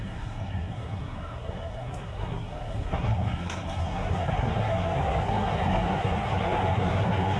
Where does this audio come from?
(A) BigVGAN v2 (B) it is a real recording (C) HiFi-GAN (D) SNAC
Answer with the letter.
D